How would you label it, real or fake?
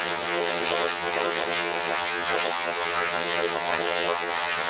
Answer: fake